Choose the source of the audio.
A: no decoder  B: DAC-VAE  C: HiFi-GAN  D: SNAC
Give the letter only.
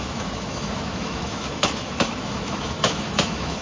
B